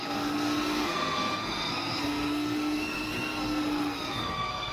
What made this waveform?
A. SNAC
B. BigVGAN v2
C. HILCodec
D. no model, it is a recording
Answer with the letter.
A